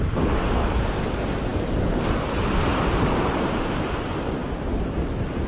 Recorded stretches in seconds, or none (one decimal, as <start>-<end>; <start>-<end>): 0.0-2.7; 4.0-5.5

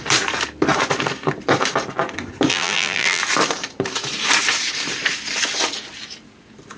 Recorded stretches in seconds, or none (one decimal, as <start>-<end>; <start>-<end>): 0.0-2.5; 3.2-6.8

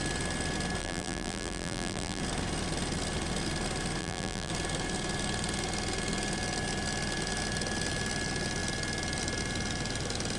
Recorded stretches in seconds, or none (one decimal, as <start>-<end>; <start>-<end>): 0.0-0.8; 2.2-4.0; 4.5-10.4